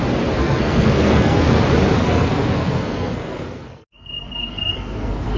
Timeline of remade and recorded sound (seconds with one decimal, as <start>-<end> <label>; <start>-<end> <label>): 0.0-0.4 recorded; 0.4-1.6 remade; 1.6-2.0 recorded; 2.0-5.4 remade